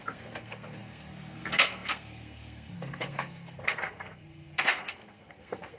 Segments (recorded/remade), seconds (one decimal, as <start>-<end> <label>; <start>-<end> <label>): 0.0-5.8 remade